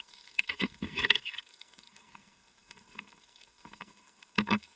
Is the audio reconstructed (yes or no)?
yes